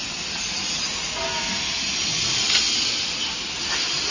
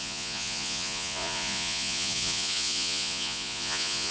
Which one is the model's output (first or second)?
second